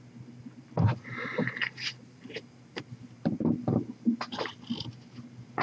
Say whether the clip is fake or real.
real